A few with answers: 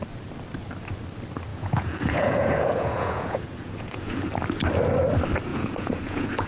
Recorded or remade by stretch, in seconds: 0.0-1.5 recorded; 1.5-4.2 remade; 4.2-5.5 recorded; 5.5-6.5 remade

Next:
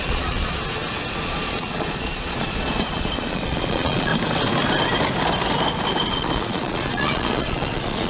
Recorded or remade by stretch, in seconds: 0.0-0.6 remade; 0.6-1.2 recorded; 1.2-4.1 remade; 4.1-6.1 recorded; 6.1-8.1 remade

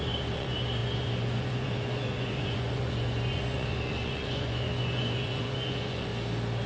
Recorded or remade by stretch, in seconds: 0.0-6.1 remade; 6.1-6.7 recorded

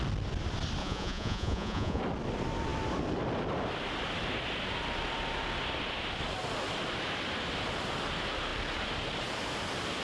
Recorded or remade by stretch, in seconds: 0.0-0.8 recorded; 0.8-2.0 remade; 2.0-10.0 recorded

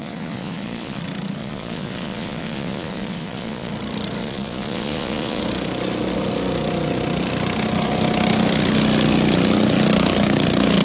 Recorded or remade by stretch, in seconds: 0.0-1.0 remade; 1.0-1.4 recorded; 1.4-3.7 remade; 3.7-4.2 recorded; 4.2-5.4 remade; 5.4-10.8 recorded

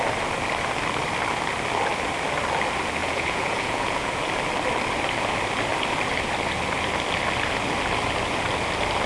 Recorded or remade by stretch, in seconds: 0.0-3.0 recorded; 3.0-4.2 remade; 4.2-9.1 recorded

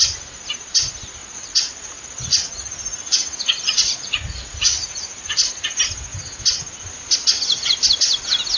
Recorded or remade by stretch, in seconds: 0.0-1.2 recorded; 1.2-5.5 remade; 5.5-8.6 recorded

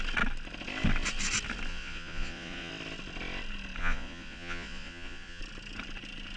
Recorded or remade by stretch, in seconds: 0.0-1.7 recorded; 1.7-2.7 remade; 2.7-3.8 recorded; 3.8-5.4 remade; 5.4-6.4 recorded